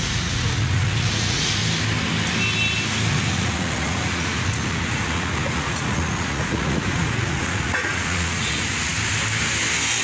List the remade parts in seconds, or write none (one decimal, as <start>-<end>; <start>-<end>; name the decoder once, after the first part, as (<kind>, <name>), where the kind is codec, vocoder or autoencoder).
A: 0.0-1.6 (vocoder, Vocos); 3.1-8.9